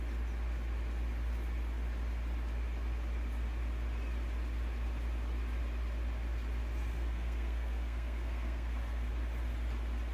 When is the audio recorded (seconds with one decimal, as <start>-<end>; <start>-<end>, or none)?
0.0-6.9; 9.1-10.1